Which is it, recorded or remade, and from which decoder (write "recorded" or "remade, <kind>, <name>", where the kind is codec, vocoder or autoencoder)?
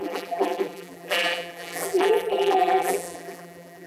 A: remade, vocoder, BigVGAN v2